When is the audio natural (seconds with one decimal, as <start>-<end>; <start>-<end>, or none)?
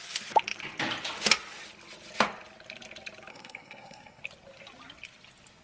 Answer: 0.0-3.3; 4.2-5.6